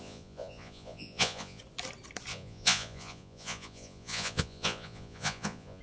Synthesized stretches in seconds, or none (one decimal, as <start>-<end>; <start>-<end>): 0.0-1.6; 2.3-5.8